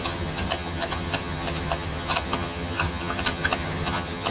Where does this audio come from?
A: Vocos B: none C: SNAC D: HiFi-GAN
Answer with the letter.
D